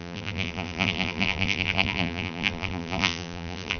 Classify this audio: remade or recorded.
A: remade